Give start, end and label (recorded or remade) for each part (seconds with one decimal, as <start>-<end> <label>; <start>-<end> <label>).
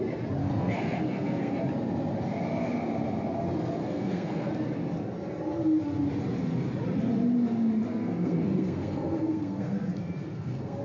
0.0-0.4 recorded; 0.4-1.6 remade; 1.6-3.8 recorded; 3.8-4.5 remade; 4.5-7.9 recorded; 7.9-10.8 remade